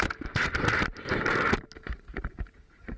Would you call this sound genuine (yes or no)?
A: yes